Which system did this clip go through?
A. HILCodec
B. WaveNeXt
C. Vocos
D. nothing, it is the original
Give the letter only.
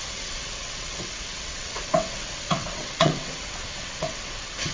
B